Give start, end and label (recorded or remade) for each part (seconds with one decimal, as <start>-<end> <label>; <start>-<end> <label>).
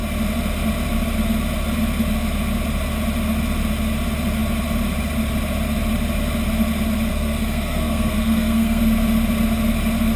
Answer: 0.0-7.1 recorded; 7.1-8.8 remade; 8.8-10.2 recorded